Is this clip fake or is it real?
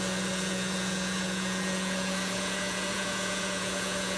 fake